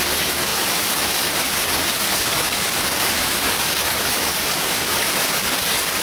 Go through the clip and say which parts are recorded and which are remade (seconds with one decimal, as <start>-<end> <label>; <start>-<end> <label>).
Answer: 0.0-6.0 remade